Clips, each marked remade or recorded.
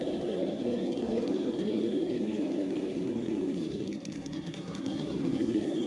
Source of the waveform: remade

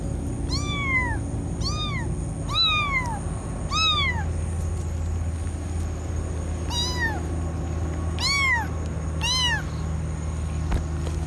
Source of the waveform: recorded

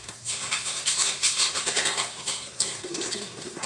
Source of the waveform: remade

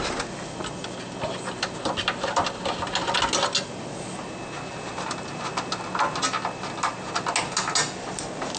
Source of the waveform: recorded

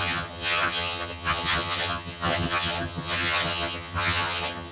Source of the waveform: remade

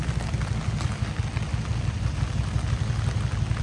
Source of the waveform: recorded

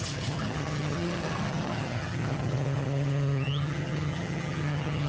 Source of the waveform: remade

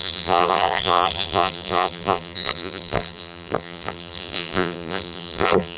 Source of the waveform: remade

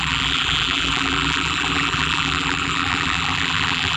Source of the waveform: remade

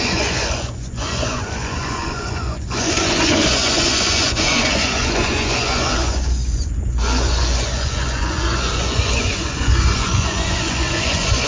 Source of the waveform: remade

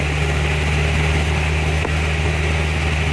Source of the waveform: recorded